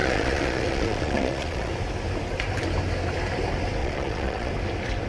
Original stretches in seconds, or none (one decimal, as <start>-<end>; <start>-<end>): 1.7-3.8; 4.5-5.1